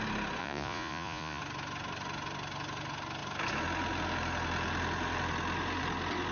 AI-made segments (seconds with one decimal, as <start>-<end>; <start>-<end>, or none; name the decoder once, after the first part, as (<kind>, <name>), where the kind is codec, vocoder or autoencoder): 0.4-1.4 (vocoder, Vocos)